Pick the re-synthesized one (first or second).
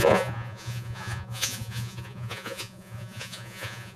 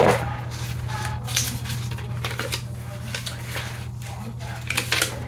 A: first